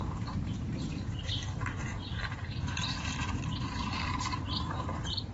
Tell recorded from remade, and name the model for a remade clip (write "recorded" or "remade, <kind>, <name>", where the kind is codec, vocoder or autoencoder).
remade, vocoder, BigVGAN v2